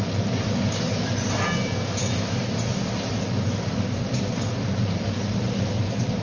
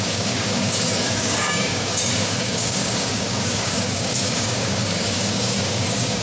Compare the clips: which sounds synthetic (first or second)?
second